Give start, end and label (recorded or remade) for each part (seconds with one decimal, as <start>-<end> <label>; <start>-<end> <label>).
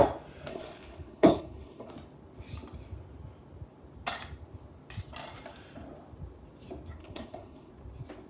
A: 0.0-0.5 recorded; 0.5-1.9 remade; 1.9-7.0 recorded; 7.0-7.7 remade; 7.7-8.3 recorded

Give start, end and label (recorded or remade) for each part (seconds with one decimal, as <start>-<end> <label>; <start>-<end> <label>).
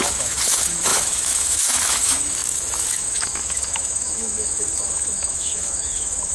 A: 0.0-6.3 remade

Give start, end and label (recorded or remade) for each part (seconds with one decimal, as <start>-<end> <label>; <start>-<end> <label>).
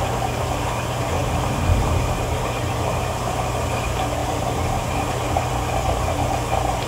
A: 0.0-6.9 recorded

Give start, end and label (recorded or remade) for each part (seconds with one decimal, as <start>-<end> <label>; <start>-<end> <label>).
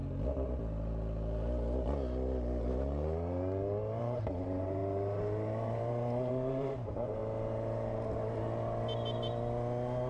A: 0.0-4.0 recorded; 4.0-7.2 remade; 7.2-10.1 recorded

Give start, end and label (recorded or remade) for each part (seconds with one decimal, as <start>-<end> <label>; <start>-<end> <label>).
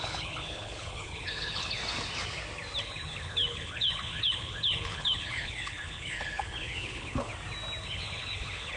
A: 0.0-1.8 remade; 1.8-2.8 recorded; 2.8-7.3 remade; 7.3-7.8 recorded; 7.8-8.8 remade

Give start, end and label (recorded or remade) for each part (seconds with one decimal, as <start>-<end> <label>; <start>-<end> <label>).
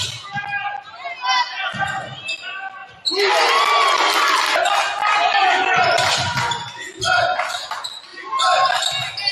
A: 0.0-2.8 recorded; 2.8-3.3 remade; 3.3-8.1 recorded; 8.1-8.8 remade; 8.8-9.3 recorded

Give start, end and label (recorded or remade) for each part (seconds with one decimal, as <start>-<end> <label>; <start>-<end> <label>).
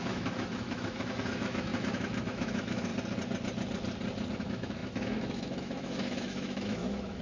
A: 0.0-2.9 remade; 2.9-4.3 recorded; 4.3-7.2 remade